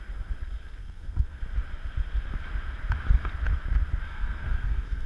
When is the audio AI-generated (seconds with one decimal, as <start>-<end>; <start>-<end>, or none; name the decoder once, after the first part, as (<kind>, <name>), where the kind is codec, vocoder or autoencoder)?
0.8-1.4 (codec, SNAC); 4.1-5.1